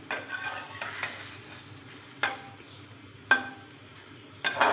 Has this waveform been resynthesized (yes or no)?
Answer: no